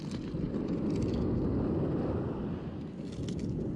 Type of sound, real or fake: real